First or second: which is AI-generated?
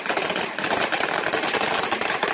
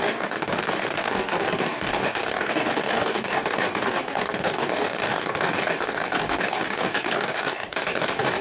second